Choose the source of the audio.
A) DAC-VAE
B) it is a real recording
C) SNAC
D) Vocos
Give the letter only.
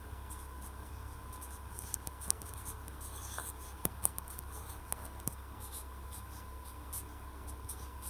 C